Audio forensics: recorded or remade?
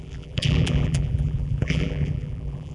remade